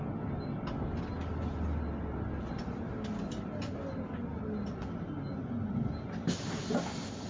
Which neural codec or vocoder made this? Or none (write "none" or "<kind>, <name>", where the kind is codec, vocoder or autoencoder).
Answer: none